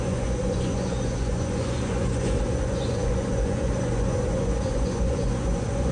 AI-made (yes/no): yes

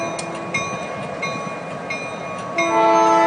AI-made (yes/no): no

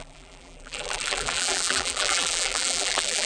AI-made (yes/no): yes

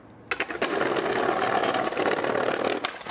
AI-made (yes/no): no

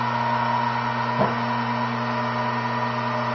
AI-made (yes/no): no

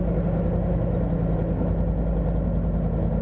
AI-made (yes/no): no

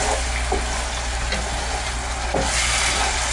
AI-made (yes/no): no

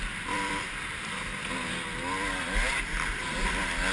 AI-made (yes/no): no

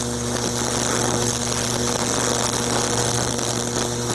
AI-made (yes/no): no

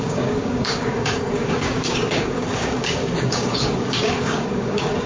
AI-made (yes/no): yes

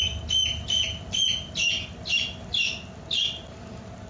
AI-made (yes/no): no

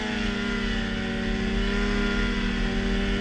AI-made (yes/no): no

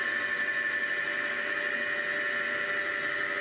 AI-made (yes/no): no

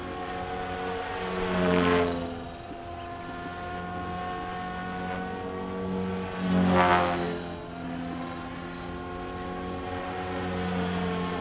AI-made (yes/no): no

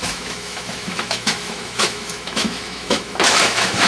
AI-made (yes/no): yes